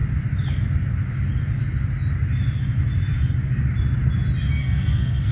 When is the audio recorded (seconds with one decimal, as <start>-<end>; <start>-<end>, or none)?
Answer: 0.0-4.6